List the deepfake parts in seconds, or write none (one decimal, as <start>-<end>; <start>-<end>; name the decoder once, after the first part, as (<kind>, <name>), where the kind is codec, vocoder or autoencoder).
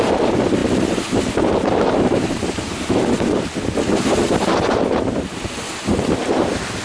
none